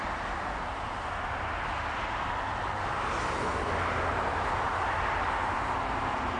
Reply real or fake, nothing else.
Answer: real